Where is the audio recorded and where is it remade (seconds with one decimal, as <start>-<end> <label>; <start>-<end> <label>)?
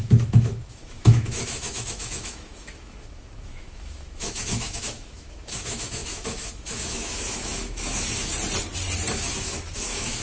0.0-8.3 remade; 8.3-9.1 recorded; 9.1-10.2 remade